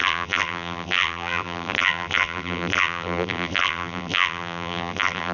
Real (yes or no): no